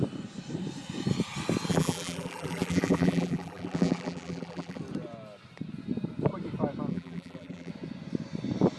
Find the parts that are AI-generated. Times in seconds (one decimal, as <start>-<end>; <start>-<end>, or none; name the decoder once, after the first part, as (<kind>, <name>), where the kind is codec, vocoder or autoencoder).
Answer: 1.7-4.8 (vocoder, BigVGAN v2); 6.9-7.7